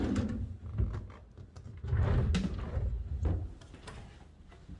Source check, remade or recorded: recorded